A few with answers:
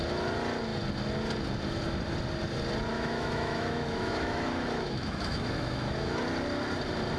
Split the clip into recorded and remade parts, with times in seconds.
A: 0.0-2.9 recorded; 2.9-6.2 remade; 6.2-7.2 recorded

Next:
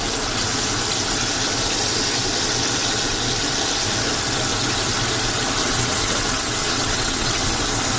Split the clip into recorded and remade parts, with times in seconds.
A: 0.0-5.6 recorded; 5.6-7.6 remade; 7.6-8.0 recorded

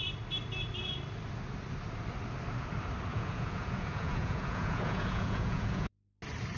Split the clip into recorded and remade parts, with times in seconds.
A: 0.0-3.1 recorded; 3.1-5.9 remade; 5.9-6.6 recorded

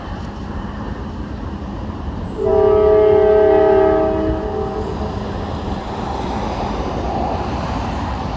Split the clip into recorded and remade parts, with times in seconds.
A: 0.0-2.5 remade; 2.5-5.7 recorded; 5.7-8.4 remade

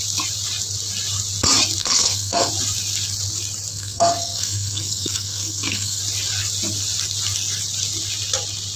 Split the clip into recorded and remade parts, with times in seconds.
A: 0.0-1.8 recorded; 1.8-2.5 remade; 2.5-3.7 recorded; 3.7-6.0 remade; 6.0-8.8 recorded

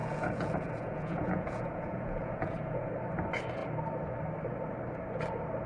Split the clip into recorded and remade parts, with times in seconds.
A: 0.0-2.9 remade; 2.9-5.7 recorded

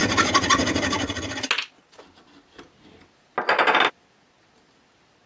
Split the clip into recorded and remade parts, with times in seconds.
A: 0.0-5.3 recorded